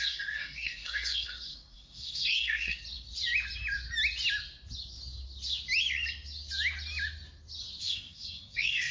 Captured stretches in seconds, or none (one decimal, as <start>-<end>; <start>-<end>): 2.8-7.8